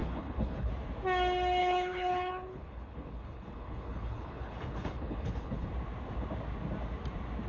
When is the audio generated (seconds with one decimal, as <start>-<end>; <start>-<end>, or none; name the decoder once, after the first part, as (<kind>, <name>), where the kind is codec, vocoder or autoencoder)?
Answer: 0.0-0.7 (codec, HILCodec); 1.6-5.7